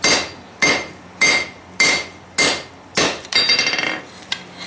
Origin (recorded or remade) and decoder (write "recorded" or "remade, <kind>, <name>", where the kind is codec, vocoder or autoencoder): recorded